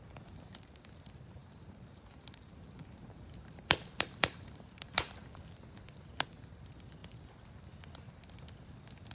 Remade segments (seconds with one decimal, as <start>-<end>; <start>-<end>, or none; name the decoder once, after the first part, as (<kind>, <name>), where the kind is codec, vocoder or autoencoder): 1.4-5.4 (vocoder, BigVGAN v2)